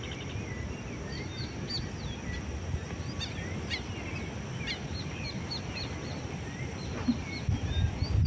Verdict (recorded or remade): recorded